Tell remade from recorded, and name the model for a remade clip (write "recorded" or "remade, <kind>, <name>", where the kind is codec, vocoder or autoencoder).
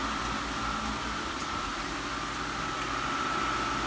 recorded